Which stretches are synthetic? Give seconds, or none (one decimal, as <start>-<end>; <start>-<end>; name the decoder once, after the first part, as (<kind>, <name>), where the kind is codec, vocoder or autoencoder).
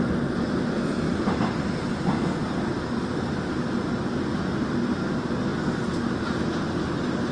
none